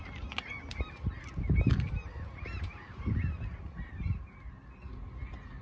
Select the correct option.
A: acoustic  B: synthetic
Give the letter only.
A